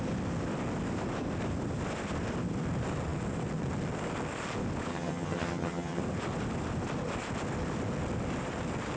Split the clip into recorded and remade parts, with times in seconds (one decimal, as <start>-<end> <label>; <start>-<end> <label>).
0.0-4.9 recorded; 4.9-6.0 remade; 6.0-9.0 recorded